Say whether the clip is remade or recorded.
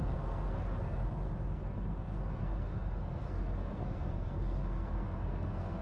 remade